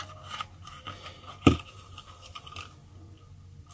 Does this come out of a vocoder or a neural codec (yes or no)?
no